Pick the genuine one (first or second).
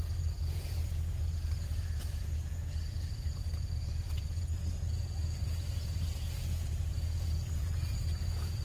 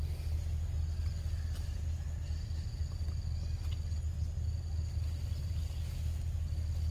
second